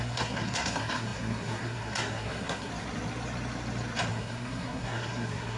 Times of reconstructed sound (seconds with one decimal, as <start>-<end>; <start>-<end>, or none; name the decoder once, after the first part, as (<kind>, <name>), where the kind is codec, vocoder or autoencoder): 0.0-2.7 (codec, SNAC); 4.1-5.6